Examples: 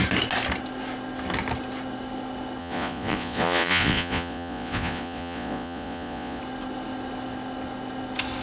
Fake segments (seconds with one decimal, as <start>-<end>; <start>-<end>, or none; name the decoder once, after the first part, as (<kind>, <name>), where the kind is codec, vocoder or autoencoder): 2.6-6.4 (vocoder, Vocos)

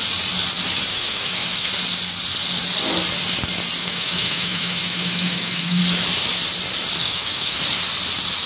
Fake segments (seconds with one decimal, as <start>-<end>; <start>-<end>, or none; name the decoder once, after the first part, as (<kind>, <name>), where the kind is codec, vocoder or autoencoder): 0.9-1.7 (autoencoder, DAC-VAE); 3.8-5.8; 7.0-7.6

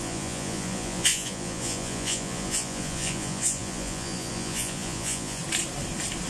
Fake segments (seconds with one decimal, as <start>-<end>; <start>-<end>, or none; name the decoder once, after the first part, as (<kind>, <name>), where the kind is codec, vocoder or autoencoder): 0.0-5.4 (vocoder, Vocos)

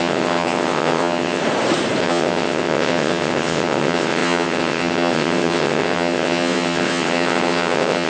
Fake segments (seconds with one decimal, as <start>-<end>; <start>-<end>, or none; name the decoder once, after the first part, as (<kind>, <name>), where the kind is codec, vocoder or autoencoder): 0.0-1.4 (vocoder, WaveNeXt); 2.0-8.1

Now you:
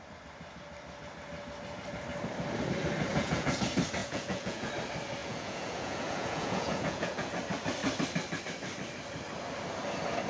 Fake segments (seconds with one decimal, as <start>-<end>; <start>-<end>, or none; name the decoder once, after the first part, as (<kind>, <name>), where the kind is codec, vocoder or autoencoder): 3.1-3.6 (vocoder, Vocos); 4.0-4.7; 5.2-7.3